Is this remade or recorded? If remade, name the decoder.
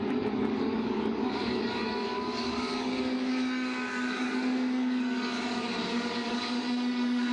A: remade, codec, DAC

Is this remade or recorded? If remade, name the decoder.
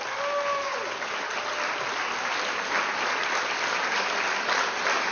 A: recorded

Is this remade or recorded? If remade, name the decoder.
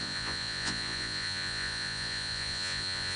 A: remade, vocoder, Vocos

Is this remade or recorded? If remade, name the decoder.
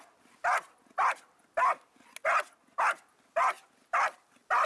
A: recorded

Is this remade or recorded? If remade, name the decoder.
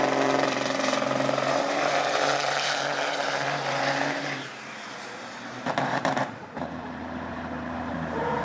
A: remade, vocoder, BigVGAN v2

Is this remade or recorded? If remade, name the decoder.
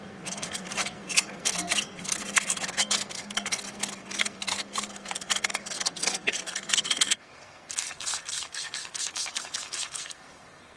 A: remade, codec, SNAC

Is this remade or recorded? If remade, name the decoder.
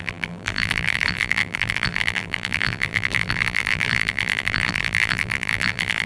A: remade, vocoder, BigVGAN v2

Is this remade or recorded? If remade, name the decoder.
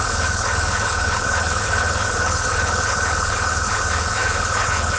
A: remade, codec, HILCodec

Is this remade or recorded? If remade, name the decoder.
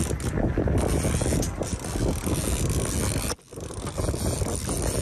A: recorded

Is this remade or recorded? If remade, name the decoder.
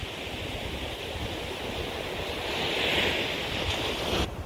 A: recorded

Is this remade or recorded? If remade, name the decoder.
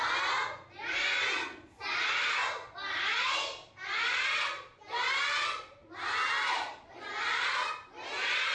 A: recorded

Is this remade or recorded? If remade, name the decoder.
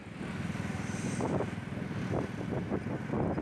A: recorded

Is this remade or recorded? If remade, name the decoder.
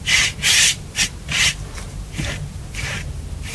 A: remade, vocoder, BigVGAN v2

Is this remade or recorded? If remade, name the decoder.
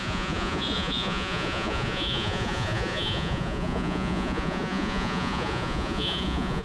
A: remade, vocoder, Vocos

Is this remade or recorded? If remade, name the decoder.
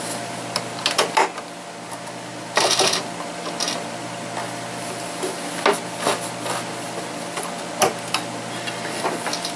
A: recorded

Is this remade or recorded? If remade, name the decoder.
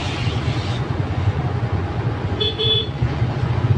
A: remade, vocoder, Vocos